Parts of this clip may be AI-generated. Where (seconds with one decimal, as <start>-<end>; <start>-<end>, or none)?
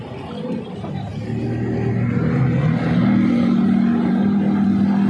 none